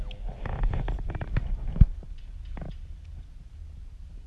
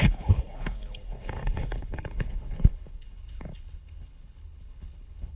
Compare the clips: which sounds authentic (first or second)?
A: first